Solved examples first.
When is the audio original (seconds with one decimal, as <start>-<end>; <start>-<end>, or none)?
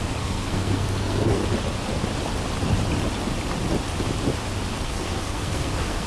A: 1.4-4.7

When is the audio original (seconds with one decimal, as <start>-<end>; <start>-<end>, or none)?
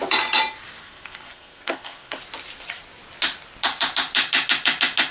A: 0.0-0.8; 2.2-5.1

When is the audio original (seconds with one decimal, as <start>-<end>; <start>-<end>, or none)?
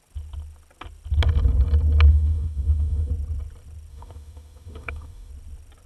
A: 0.0-2.1; 3.1-3.9; 5.3-5.9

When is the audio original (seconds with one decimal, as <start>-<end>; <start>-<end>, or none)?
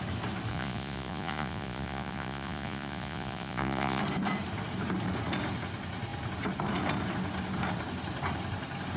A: 0.0-0.5; 4.0-9.0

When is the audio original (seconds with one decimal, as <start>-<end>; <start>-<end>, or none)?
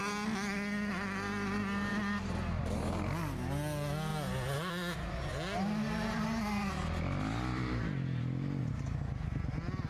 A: 0.0-9.9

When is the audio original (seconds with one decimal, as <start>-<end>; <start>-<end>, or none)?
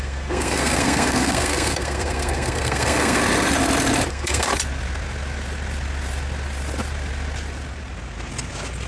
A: 3.2-4.1; 4.5-8.9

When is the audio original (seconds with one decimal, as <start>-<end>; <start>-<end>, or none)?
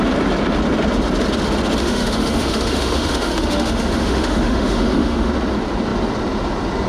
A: 0.0-1.8; 5.3-6.9